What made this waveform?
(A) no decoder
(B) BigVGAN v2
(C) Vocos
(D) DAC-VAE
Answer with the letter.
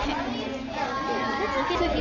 A